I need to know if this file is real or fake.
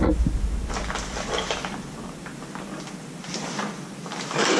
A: real